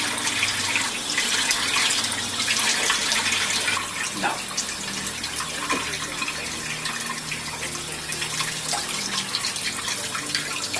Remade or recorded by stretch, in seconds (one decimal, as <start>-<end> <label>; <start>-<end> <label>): 0.0-10.8 recorded